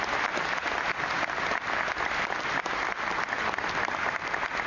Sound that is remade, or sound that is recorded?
recorded